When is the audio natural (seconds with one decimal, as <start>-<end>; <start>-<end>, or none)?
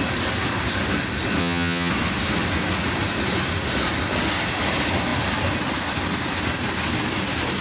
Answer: 0.0-1.4; 1.9-7.6